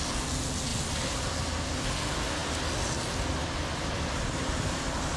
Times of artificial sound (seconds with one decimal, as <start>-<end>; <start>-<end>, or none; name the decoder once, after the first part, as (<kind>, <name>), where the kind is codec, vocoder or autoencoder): none